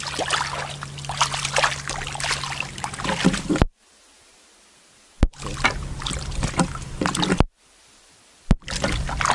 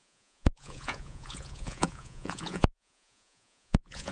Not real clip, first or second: second